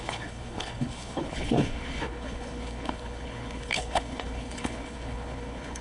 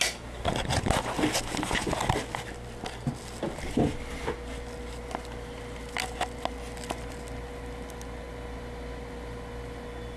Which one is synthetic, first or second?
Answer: first